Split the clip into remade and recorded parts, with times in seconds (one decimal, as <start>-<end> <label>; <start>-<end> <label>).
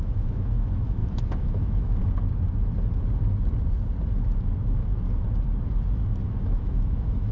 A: 0.0-2.0 remade; 2.0-6.4 recorded; 6.4-7.3 remade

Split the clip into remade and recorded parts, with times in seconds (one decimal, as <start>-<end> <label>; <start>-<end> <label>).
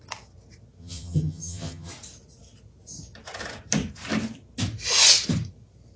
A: 0.0-0.8 recorded; 0.8-1.9 remade; 1.9-6.0 recorded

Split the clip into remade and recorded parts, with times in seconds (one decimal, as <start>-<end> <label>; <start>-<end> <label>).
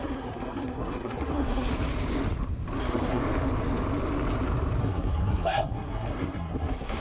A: 0.0-1.7 remade; 1.7-2.8 recorded; 2.8-3.2 remade; 3.2-4.8 recorded; 4.8-7.0 remade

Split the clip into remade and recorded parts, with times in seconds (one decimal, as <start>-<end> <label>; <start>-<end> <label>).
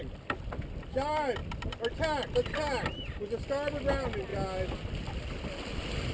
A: 0.0-6.1 recorded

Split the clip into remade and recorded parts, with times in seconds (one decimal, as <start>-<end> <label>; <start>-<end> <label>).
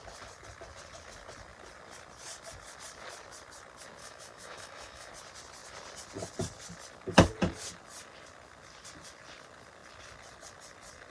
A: 0.0-4.0 recorded; 4.0-5.1 remade; 5.1-11.1 recorded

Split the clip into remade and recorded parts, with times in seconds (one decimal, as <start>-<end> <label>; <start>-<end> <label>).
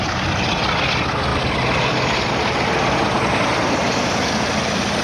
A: 0.0-1.3 recorded; 1.3-1.9 remade; 1.9-3.8 recorded; 3.8-5.0 remade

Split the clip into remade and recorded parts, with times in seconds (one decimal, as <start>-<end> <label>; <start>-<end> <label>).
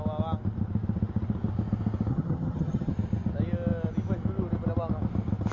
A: 0.0-2.1 recorded; 2.1-2.9 remade; 2.9-5.5 recorded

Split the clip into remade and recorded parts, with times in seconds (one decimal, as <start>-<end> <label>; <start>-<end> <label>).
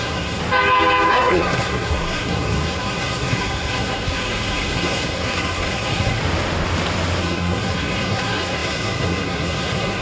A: 0.0-0.4 remade; 0.4-1.1 recorded; 1.1-6.2 remade; 6.2-7.2 recorded; 7.2-10.0 remade